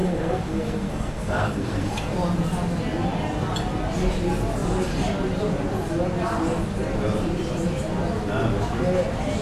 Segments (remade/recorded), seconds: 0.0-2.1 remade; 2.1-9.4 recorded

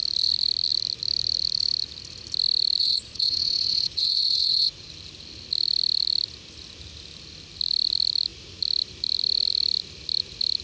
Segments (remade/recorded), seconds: 0.0-2.8 recorded; 2.8-4.9 remade; 4.9-10.6 recorded

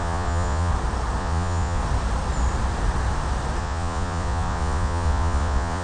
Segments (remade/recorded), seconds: 0.0-0.7 remade; 0.7-1.2 recorded; 1.2-1.8 remade; 1.8-3.6 recorded; 3.6-5.8 remade